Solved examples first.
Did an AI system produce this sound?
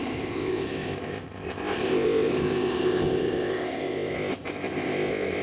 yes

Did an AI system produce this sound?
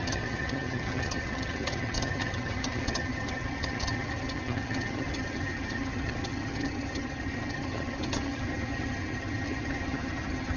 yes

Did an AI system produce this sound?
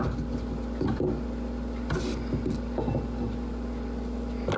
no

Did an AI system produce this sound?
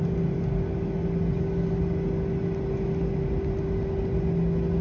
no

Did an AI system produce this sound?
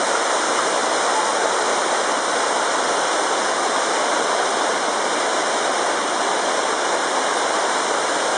no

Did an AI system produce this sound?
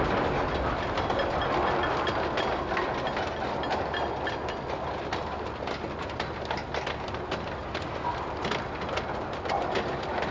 no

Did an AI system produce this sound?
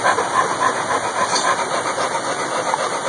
no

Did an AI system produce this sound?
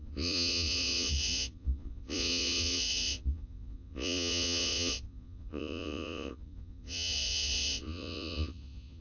yes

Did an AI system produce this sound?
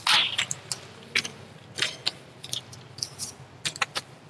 no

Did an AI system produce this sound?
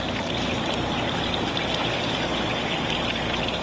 no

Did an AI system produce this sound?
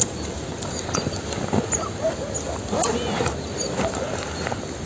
no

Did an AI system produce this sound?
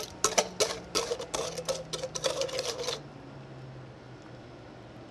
no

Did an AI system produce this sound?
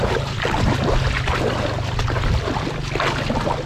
no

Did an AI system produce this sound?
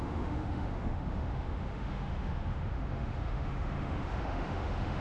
yes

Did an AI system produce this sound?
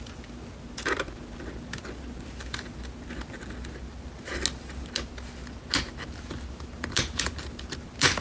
no